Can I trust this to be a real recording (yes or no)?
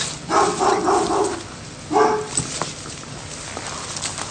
yes